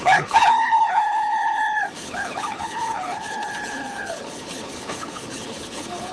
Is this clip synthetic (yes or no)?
yes